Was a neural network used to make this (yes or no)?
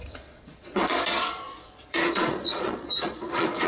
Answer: yes